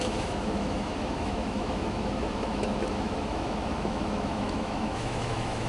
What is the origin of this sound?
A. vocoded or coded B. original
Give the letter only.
A